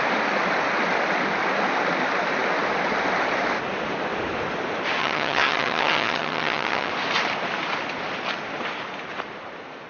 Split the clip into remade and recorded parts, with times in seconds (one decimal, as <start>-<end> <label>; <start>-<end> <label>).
0.0-5.0 recorded; 5.0-6.9 remade; 6.9-9.9 recorded